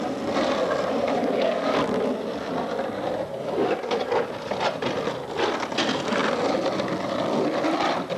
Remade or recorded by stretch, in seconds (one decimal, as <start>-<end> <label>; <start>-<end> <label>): 0.0-1.2 recorded; 1.2-1.8 remade; 1.8-3.3 recorded; 3.3-4.2 remade; 4.2-8.2 recorded